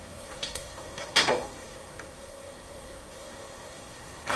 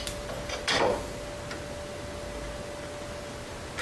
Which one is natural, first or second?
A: second